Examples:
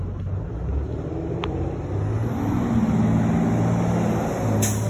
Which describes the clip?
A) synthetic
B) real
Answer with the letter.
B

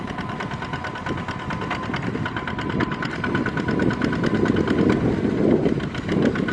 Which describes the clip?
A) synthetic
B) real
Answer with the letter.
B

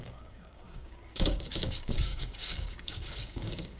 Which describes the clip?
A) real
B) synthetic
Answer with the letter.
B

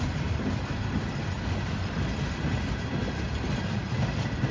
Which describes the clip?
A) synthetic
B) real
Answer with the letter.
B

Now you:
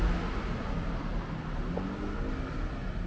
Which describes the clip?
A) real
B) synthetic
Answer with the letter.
A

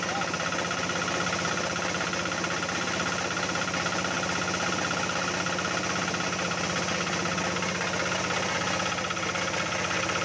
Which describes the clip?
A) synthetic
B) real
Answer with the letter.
B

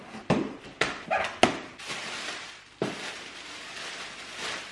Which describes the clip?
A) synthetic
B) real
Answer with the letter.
B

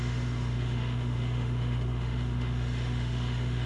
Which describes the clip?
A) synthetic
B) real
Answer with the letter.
A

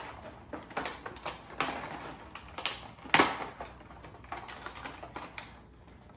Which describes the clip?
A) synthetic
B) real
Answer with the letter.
B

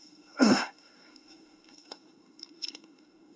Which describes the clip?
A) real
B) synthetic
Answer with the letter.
B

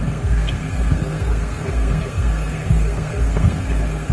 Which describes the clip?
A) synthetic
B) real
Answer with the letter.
A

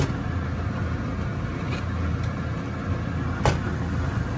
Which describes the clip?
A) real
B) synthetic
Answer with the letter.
A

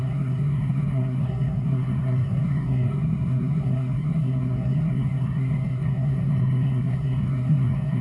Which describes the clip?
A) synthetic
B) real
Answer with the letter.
A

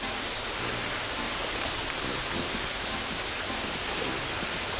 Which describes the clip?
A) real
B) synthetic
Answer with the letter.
A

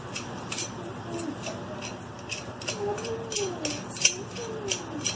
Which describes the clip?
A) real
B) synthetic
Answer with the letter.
A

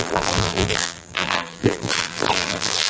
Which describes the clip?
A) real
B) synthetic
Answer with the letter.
B